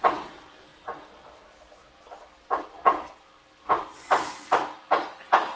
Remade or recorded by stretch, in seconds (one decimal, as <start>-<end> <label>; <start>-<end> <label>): 0.0-5.6 recorded